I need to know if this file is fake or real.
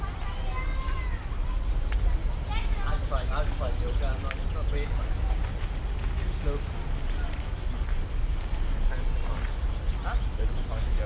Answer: real